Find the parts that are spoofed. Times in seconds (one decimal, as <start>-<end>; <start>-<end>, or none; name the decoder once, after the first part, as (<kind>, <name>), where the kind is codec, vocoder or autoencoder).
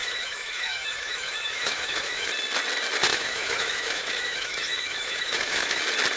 0.0-2.3 (autoencoder, DAC-VAE); 3.1-5.8